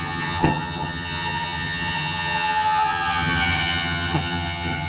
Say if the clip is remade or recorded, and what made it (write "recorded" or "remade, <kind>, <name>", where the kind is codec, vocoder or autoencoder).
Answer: remade, vocoder, HiFi-GAN